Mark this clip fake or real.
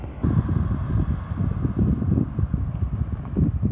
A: real